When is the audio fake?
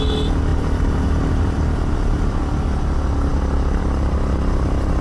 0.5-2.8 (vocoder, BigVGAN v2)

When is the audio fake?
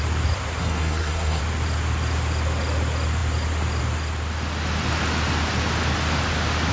0.6-1.4 (codec, SNAC)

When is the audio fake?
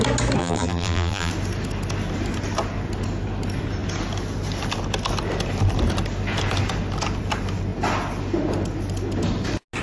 0.4-1.3 (vocoder, BigVGAN v2)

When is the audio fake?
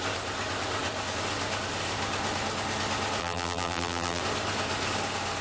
3.2-4.2 (vocoder, BigVGAN v2)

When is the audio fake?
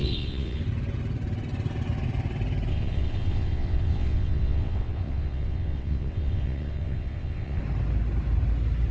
0.0-0.6 (vocoder, WaveNeXt); 2.7-7.6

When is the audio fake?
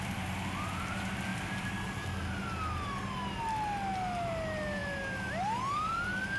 none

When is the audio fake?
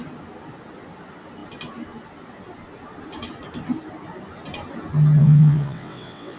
5.2-6.4 (vocoder, WaveNeXt)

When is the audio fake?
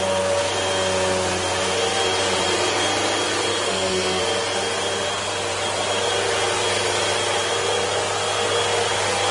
3.5-4.2 (codec, SNAC)